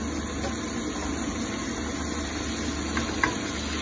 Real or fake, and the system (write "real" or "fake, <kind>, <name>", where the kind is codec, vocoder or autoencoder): real